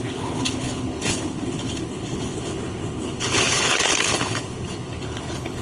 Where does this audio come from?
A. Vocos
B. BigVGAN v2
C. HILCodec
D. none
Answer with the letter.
C